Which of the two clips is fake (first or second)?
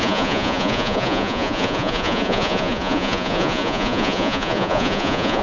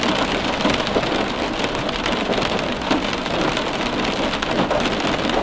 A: first